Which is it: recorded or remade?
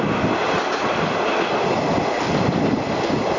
recorded